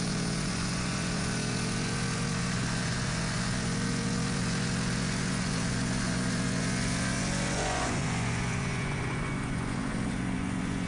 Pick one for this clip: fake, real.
fake